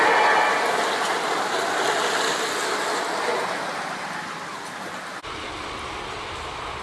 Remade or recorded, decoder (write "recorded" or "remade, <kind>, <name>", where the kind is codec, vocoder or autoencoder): recorded